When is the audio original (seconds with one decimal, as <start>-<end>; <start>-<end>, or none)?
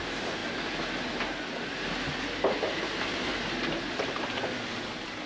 0.0-5.3